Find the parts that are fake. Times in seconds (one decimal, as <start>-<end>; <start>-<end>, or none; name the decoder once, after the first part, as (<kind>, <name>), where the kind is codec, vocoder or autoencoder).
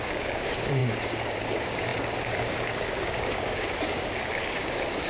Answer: 0.0-5.1 (codec, DAC)